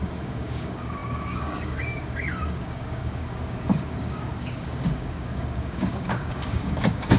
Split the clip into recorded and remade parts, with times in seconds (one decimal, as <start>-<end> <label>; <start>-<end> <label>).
0.0-7.2 remade